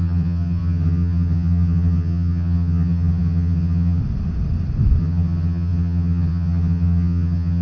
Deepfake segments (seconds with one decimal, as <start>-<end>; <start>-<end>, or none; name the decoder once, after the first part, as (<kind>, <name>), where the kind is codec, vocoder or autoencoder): 0.0-4.0 (vocoder, HiFi-GAN); 5.0-7.6